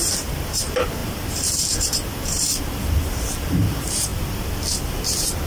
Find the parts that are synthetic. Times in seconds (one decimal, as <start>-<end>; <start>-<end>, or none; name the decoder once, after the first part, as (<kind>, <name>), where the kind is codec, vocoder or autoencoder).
0.0-4.1 (vocoder, BigVGAN v2); 4.9-5.5